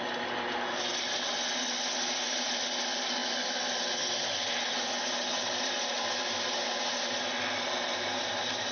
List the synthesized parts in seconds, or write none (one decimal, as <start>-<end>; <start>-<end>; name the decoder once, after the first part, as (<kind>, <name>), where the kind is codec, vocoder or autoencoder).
none